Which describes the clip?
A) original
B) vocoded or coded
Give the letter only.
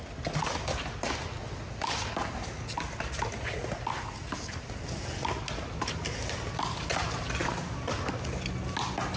A